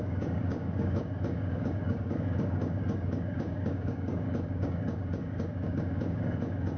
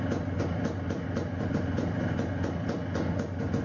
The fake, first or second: first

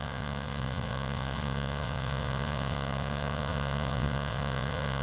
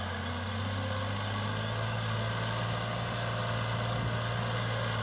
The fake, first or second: first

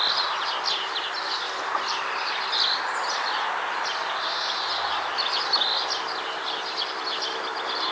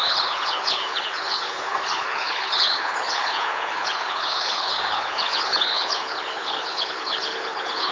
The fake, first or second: second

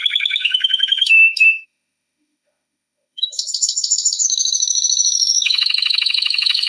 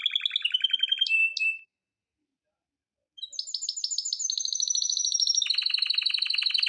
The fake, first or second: first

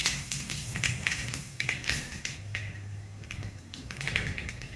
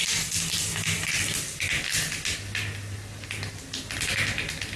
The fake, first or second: first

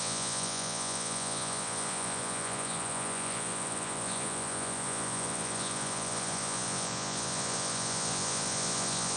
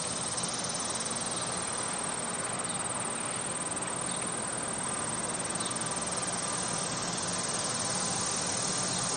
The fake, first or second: first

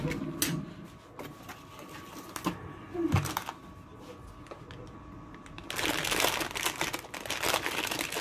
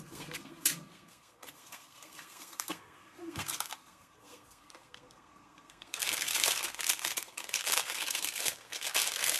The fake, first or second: second